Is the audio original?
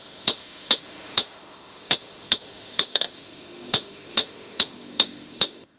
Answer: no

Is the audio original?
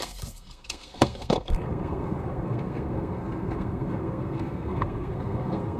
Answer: no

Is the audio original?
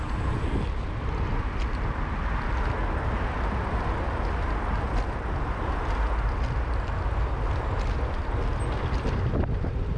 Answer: yes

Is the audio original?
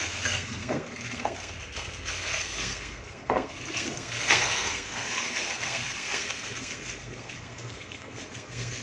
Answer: no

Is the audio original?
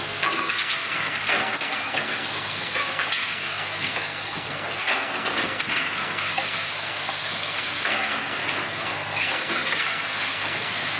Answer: no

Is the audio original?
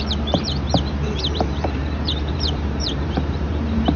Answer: no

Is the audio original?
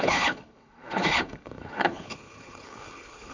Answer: no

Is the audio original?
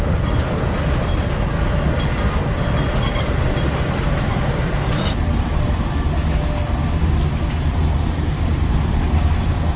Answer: yes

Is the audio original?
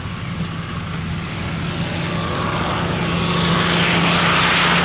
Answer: yes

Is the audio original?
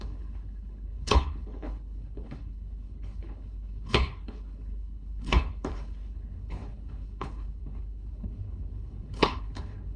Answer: no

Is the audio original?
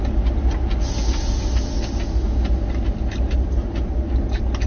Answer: yes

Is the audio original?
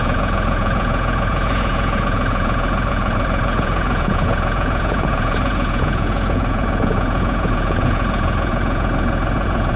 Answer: no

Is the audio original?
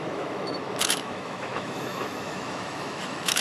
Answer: no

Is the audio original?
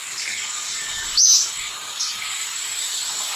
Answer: no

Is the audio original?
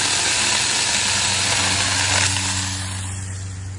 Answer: yes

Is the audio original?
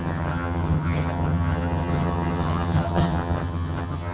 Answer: no